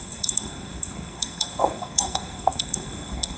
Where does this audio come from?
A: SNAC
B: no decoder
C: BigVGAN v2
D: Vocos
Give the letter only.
A